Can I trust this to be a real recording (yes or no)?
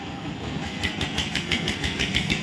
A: no